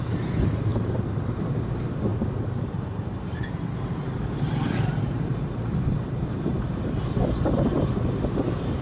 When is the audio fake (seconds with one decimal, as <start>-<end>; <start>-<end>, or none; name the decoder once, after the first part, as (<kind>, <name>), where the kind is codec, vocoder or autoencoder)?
0.0-2.1 (vocoder, BigVGAN v2); 2.6-8.8